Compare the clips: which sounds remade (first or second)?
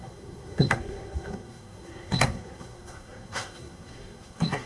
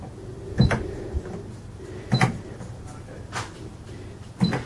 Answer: first